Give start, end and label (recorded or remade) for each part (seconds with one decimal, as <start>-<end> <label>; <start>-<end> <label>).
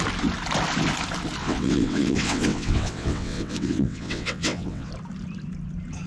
0.0-1.4 recorded; 1.4-4.9 remade; 4.9-6.1 recorded